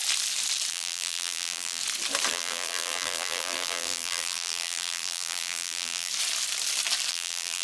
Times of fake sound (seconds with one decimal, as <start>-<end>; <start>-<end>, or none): 0.7-1.8; 2.3-6.1; 7.1-7.6

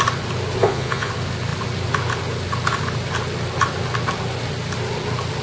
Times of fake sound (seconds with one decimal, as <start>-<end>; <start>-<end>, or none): 0.6-1.1